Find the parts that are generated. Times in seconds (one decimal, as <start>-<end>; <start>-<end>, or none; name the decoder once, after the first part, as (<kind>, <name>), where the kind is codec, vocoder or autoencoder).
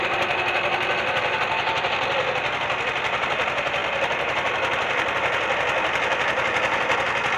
none